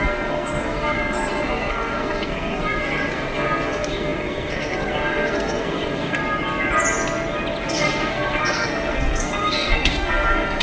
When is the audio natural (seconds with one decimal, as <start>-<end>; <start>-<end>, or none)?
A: 6.2-7.7